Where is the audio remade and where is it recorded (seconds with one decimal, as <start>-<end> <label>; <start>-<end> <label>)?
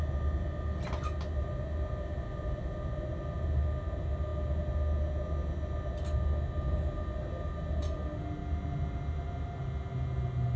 0.0-10.6 recorded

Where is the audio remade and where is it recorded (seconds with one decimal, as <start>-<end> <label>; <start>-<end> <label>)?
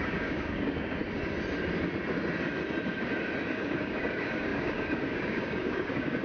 0.0-1.0 remade; 1.0-3.5 recorded; 3.5-6.2 remade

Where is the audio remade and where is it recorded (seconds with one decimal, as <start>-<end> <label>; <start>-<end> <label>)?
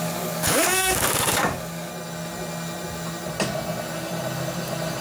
0.0-1.9 remade; 1.9-5.0 recorded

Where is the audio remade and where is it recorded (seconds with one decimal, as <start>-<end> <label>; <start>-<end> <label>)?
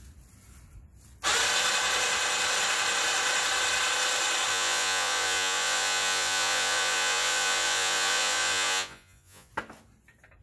0.0-4.5 recorded; 4.5-9.5 remade; 9.5-10.4 recorded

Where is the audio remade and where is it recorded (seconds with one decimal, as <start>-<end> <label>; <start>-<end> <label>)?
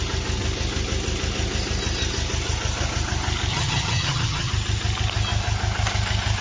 0.0-3.5 recorded; 3.5-4.5 remade; 4.5-6.4 recorded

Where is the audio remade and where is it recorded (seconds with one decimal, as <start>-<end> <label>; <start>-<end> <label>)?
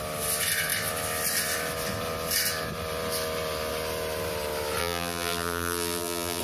0.0-4.8 recorded; 4.8-6.4 remade